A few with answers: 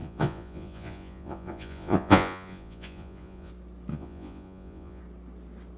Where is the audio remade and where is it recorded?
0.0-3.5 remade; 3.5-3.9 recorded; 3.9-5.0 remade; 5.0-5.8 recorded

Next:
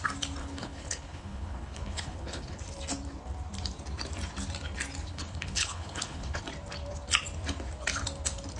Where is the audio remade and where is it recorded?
0.0-0.4 recorded; 0.4-2.6 remade; 2.6-5.1 recorded; 5.1-6.4 remade; 6.4-8.6 recorded

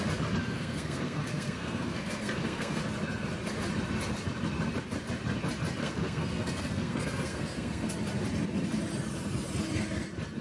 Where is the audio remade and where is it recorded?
0.0-0.4 recorded; 0.4-2.8 remade; 2.8-5.8 recorded; 5.8-7.9 remade; 7.9-10.4 recorded